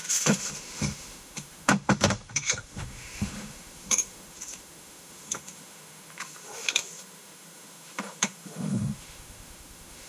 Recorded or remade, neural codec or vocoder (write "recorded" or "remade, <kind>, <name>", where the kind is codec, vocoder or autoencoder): remade, autoencoder, DAC-VAE